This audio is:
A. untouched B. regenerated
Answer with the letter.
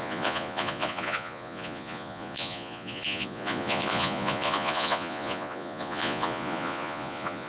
B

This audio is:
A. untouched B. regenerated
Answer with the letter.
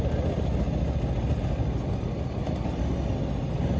A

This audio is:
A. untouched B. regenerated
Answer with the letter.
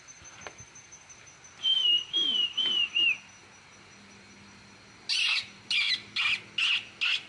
A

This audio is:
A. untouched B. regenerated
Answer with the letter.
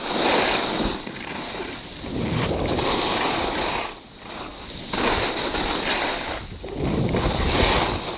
A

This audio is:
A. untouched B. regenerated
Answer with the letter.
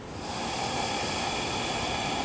A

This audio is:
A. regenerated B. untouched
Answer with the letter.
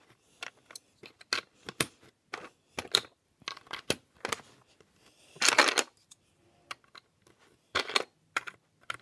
B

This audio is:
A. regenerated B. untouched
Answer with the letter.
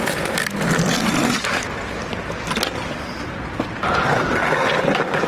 B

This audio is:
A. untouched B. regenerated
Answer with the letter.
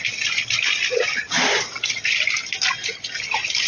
A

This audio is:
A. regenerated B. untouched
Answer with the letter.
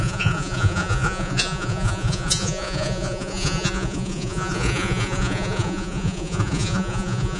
A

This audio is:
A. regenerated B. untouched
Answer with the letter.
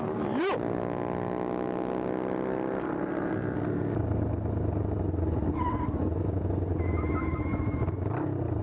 B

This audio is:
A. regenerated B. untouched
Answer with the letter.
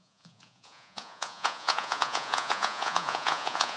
A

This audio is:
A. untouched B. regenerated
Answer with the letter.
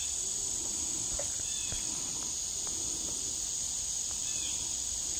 A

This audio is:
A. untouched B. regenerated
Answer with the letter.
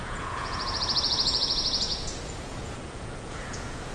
B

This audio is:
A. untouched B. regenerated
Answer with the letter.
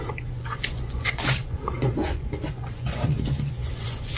B